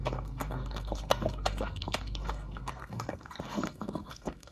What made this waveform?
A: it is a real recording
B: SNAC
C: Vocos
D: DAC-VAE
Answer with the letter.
B